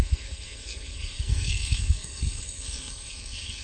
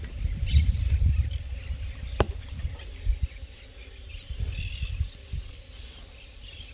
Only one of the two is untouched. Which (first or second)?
second